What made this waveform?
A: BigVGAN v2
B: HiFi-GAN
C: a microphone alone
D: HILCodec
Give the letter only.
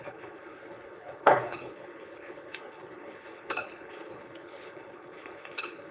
D